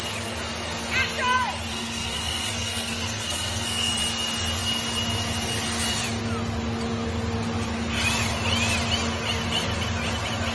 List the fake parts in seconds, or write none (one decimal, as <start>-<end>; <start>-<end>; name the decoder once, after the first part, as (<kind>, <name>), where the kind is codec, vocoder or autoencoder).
1.7-3.9 (codec, SNAC)